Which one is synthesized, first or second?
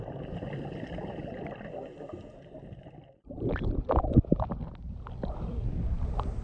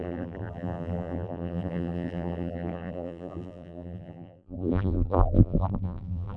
second